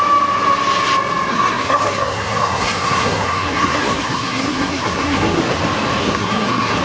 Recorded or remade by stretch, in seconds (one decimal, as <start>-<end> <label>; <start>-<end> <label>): 0.0-1.3 recorded; 1.3-5.4 remade; 5.4-6.0 recorded; 6.0-6.8 remade

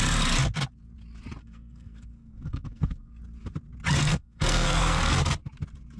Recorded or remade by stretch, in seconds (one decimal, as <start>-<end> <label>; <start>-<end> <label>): 0.0-1.4 recorded; 1.4-3.2 remade; 3.2-4.0 recorded; 4.0-5.0 remade; 5.0-6.0 recorded